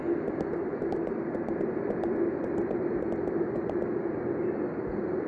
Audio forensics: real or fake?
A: real